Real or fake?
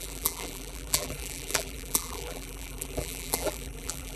fake